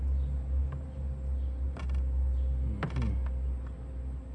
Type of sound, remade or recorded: recorded